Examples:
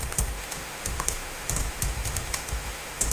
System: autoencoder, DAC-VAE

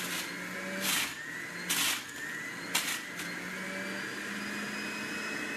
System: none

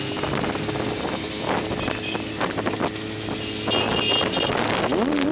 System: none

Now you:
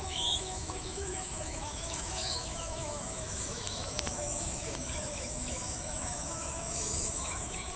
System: autoencoder, DAC-VAE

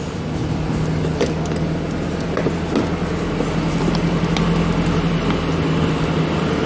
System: none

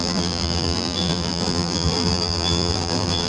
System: vocoder, BigVGAN v2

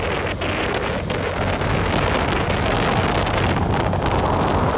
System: none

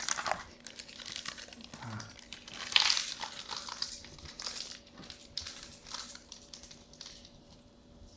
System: vocoder, BigVGAN v2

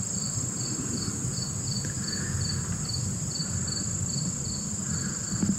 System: none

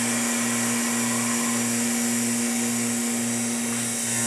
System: none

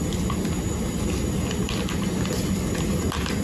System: none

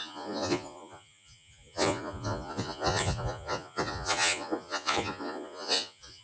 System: vocoder, Vocos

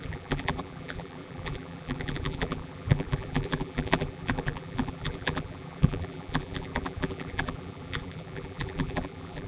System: vocoder, BigVGAN v2